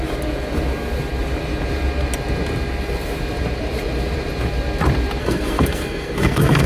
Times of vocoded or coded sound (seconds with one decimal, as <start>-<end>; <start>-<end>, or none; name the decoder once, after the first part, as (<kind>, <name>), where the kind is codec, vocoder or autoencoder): 5.2-6.7 (codec, SNAC)